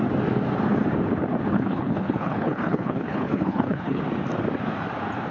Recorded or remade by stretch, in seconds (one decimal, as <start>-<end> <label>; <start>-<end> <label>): 0.0-1.5 recorded; 1.5-4.0 remade; 4.0-5.3 recorded